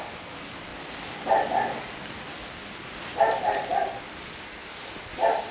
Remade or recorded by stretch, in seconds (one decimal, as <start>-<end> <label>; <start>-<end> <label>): 0.0-5.5 recorded

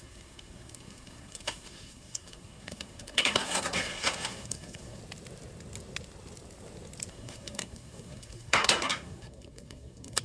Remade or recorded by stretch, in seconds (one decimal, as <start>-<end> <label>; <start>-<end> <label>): 0.0-5.0 remade; 5.0-7.1 recorded; 7.1-10.2 remade

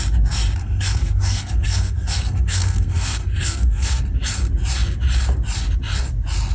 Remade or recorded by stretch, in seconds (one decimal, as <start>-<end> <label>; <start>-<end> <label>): 0.0-0.6 recorded; 0.6-4.0 remade; 4.0-6.5 recorded

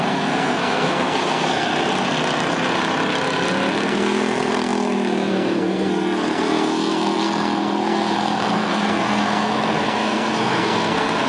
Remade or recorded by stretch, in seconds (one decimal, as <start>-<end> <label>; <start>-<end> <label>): 0.0-1.7 remade; 1.7-3.7 recorded; 3.7-11.3 remade

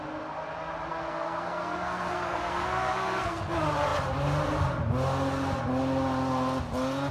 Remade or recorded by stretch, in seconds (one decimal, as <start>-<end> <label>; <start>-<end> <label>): 0.0-0.9 recorded; 0.9-3.4 remade; 3.4-7.1 recorded

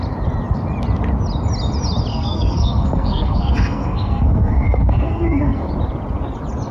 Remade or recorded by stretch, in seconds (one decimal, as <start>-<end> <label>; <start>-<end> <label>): 0.0-2.1 recorded; 2.1-5.7 remade; 5.7-6.7 recorded

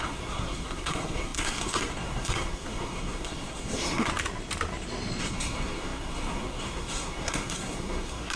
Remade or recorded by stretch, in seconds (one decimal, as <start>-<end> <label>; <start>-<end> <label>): 0.0-4.1 remade; 4.1-5.2 recorded; 5.2-8.4 remade